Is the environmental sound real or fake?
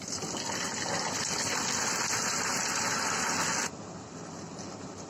real